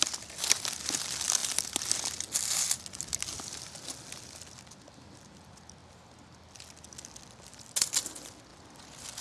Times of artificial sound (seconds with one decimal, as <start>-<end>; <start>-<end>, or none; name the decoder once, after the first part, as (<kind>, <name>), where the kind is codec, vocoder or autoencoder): none